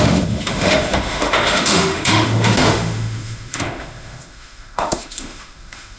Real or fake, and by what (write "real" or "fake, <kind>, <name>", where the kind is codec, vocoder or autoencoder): fake, autoencoder, DAC-VAE